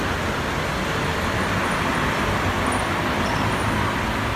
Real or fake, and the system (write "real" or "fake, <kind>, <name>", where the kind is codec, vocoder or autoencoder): real